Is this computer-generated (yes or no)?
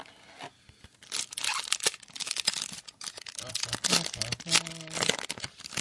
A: no